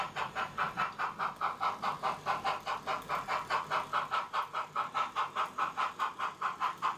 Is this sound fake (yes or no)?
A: yes